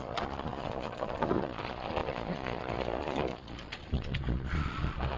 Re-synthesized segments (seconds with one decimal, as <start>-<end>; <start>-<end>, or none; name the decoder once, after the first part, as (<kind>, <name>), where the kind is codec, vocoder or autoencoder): 0.0-5.2 (vocoder, Vocos)